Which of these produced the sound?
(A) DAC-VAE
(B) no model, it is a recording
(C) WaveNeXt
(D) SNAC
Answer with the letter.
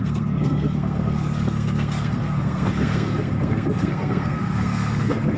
D